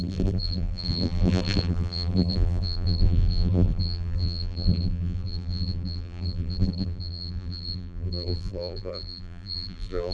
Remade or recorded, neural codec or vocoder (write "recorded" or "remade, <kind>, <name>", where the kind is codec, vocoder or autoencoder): remade, vocoder, BigVGAN v2